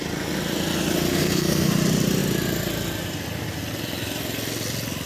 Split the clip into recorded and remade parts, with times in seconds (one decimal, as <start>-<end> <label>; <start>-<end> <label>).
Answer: 0.0-1.1 recorded; 1.1-1.7 remade; 1.7-5.1 recorded